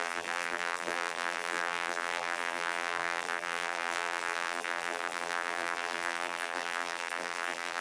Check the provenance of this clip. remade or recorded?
remade